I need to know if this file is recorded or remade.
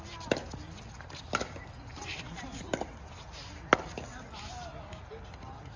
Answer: recorded